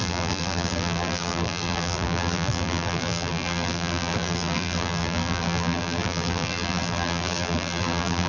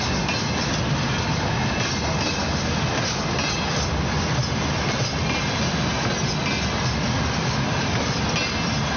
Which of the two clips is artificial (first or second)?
first